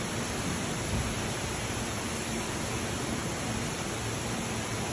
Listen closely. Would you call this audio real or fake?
fake